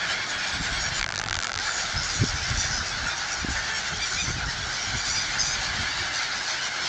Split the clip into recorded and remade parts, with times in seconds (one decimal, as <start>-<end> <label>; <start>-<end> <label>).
0.0-1.0 recorded; 1.0-1.6 remade; 1.6-6.9 recorded

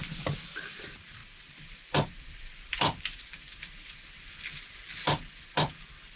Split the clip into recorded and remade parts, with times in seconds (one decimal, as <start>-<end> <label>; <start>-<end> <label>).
0.0-6.2 remade

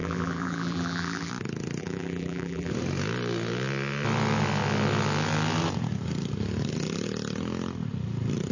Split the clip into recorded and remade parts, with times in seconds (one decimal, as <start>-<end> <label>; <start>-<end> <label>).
0.0-1.3 remade; 1.3-1.8 recorded; 1.8-2.7 remade; 2.7-8.5 recorded

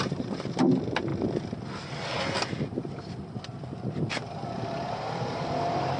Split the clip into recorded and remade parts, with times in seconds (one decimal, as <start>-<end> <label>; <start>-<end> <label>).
0.0-1.1 remade; 1.1-4.1 recorded; 4.1-6.0 remade

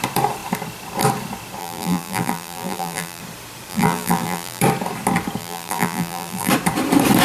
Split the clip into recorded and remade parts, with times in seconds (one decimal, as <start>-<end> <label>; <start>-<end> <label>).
0.0-1.6 recorded; 1.6-3.2 remade; 3.2-3.7 recorded; 3.7-4.6 remade; 4.6-5.4 recorded; 5.4-6.5 remade; 6.5-7.2 recorded

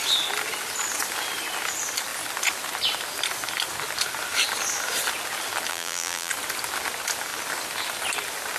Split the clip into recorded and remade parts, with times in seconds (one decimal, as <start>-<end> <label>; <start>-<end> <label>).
0.0-5.7 recorded; 5.7-6.3 remade; 6.3-8.6 recorded

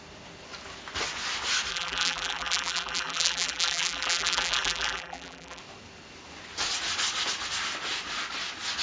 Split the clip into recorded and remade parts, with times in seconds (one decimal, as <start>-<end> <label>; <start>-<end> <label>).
0.0-1.7 recorded; 1.7-5.6 remade; 5.6-8.8 recorded

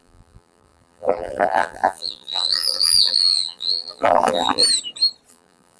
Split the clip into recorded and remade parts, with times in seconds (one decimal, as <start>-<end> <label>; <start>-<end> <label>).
0.0-4.6 remade; 4.6-5.3 recorded; 5.3-5.8 remade